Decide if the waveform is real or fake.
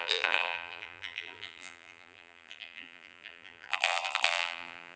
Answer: fake